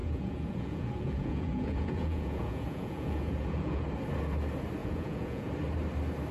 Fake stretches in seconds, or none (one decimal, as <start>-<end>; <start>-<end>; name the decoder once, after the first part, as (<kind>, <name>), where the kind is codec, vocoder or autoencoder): 0.0-3.8 (vocoder, Vocos); 4.8-5.5